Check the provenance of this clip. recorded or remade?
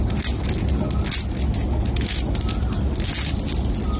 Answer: recorded